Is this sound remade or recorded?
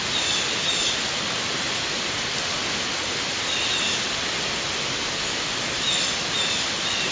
recorded